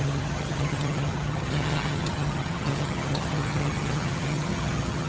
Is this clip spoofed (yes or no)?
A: yes